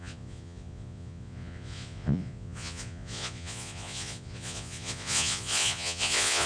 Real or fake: fake